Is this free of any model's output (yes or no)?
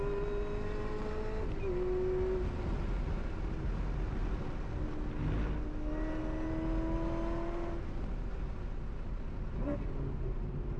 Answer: yes